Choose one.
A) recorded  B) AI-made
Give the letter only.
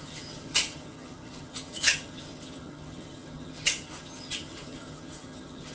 B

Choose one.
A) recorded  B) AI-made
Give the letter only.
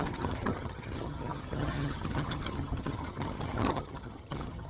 B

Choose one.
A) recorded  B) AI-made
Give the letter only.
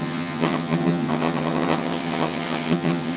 B